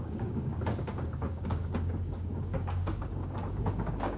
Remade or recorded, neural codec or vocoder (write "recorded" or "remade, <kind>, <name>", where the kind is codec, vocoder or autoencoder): remade, codec, DAC